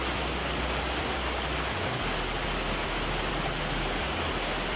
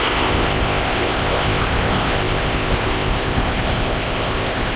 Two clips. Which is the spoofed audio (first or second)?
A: second